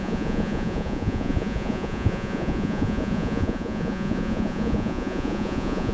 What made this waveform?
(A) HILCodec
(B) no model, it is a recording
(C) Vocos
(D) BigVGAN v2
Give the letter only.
C